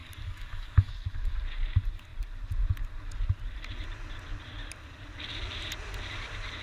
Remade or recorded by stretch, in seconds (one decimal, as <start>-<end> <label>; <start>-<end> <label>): 0.0-0.9 remade; 0.9-6.6 recorded